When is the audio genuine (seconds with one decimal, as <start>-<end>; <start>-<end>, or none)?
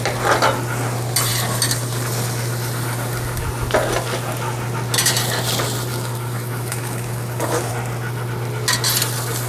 0.0-5.9; 7.7-9.5